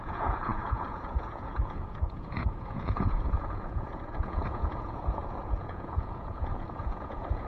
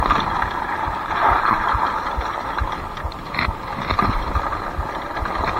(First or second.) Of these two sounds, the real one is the second